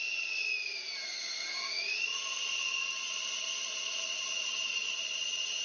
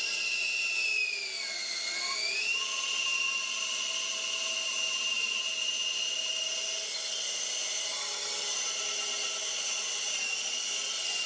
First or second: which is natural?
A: second